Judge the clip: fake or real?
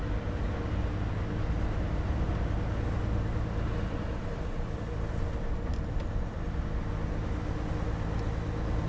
real